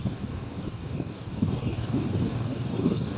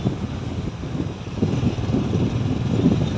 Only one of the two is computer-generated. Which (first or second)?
first